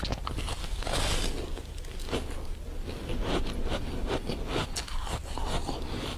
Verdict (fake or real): real